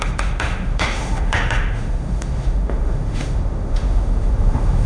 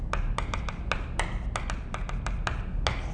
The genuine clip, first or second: second